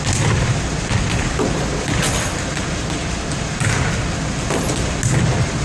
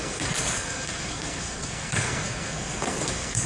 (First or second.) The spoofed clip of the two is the second